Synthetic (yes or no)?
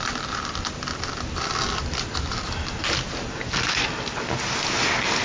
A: no